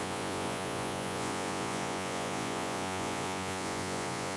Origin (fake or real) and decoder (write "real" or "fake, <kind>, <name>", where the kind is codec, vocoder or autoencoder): fake, vocoder, Vocos